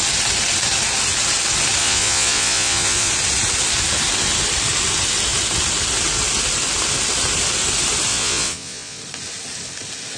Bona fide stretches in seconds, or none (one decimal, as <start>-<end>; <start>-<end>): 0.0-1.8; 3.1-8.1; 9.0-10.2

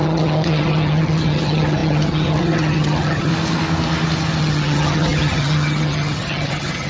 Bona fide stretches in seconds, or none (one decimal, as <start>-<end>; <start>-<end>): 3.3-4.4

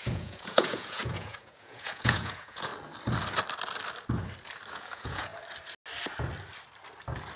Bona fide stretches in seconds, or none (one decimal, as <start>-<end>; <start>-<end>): 2.7-4.7; 5.3-7.4

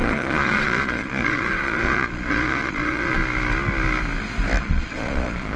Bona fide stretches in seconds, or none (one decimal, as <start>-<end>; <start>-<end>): 3.2-4.6

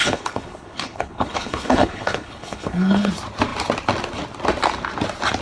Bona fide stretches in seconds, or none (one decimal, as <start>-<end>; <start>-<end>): 3.1-5.4

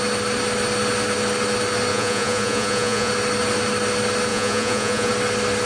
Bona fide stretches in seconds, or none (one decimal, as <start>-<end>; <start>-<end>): 0.0-1.9; 3.1-4.3; 5.1-5.7

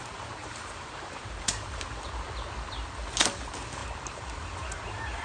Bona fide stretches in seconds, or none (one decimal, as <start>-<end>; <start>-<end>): 0.0-0.4; 2.1-5.2

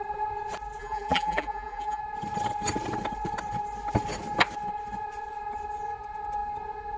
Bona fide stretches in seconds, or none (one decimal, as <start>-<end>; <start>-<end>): 0.0-0.8; 2.0-7.0